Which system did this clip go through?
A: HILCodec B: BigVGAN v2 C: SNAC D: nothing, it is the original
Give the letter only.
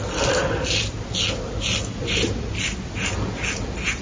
D